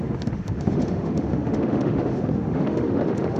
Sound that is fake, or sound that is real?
fake